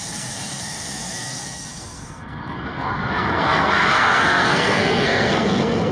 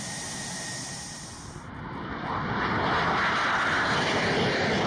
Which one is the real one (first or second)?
second